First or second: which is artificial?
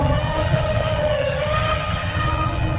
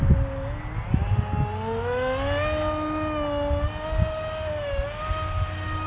first